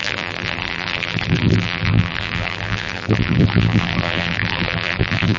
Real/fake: fake